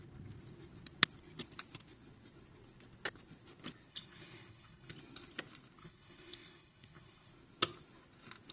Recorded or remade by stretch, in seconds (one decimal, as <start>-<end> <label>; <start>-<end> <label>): 0.0-3.9 recorded; 3.9-4.9 remade; 4.9-5.8 recorded; 5.8-7.3 remade; 7.3-8.5 recorded